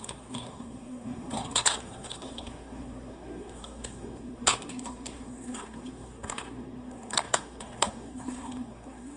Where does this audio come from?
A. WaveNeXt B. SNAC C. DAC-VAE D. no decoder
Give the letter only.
B